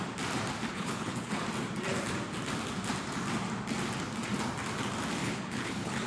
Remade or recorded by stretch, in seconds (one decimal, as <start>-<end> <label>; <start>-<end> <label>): 0.0-0.7 recorded; 0.7-1.4 remade; 1.4-5.2 recorded; 5.2-6.1 remade